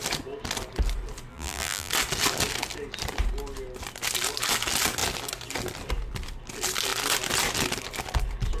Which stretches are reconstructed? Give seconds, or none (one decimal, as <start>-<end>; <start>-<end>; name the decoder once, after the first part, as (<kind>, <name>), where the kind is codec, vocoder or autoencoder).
1.3-1.9 (vocoder, BigVGAN v2)